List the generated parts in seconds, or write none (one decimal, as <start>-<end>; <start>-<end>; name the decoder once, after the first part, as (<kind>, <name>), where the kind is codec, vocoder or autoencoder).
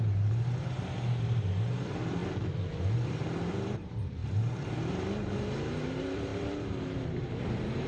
0.0-2.2 (vocoder, BigVGAN v2); 2.7-7.9